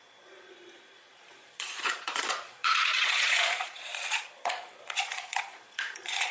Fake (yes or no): yes